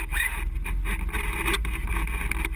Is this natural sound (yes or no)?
yes